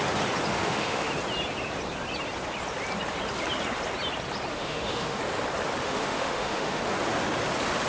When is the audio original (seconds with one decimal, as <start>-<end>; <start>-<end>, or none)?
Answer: 0.0-0.5; 1.1-4.5; 5.2-5.8; 6.8-7.9